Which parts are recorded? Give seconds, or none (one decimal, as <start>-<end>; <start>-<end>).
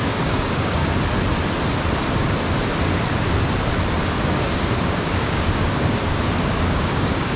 0.8-4.2